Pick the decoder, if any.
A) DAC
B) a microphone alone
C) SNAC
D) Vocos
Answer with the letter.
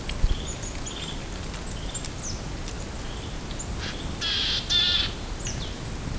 B